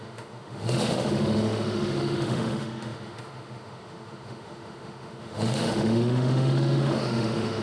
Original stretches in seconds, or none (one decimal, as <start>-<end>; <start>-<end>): none